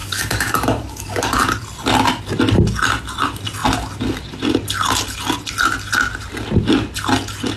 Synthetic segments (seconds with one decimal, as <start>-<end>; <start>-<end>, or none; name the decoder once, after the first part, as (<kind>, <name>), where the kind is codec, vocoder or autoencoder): 0.0-1.5 (codec, DAC)